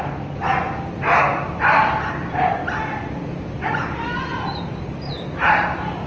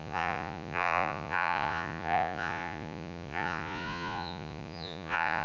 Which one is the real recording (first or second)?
first